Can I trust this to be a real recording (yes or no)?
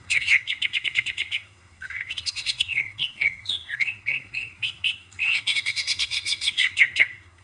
no